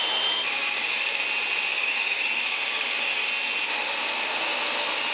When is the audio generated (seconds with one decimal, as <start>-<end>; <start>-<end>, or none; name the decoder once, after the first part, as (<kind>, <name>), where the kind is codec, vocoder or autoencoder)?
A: 0.6-1.2 (codec, DAC); 1.7-3.3